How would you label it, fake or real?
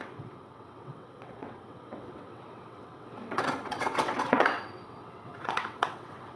fake